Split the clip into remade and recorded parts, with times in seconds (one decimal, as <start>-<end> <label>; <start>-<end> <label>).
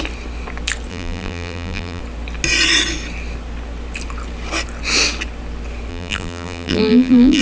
0.0-0.9 recorded; 0.9-2.0 remade; 2.0-5.9 recorded; 5.9-7.4 remade